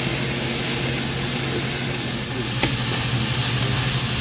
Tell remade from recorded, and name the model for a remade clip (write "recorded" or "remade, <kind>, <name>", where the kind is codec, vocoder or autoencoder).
recorded